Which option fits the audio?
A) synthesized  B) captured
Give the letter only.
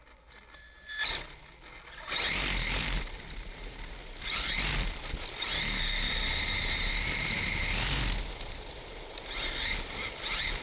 B